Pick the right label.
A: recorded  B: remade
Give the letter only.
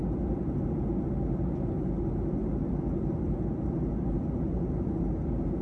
A